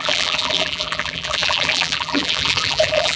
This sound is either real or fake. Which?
fake